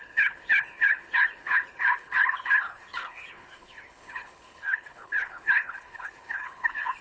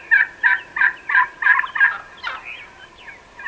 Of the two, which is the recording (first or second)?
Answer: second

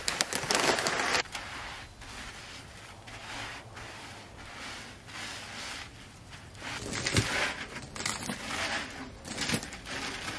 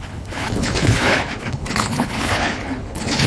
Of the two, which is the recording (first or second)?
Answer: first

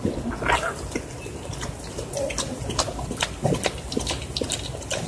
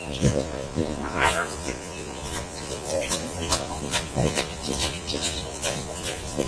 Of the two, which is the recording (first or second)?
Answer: first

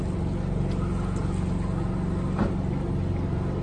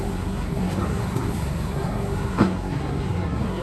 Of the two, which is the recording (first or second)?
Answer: first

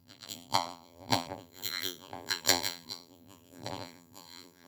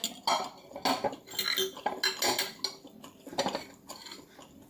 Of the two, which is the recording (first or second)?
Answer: second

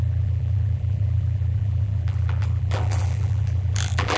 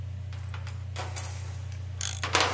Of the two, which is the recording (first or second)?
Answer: second